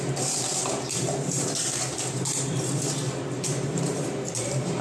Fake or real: fake